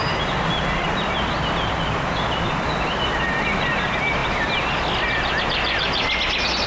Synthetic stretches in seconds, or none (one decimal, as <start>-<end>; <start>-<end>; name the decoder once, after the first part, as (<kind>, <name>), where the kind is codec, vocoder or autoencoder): none